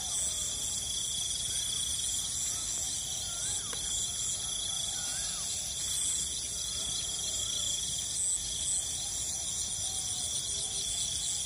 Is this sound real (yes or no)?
yes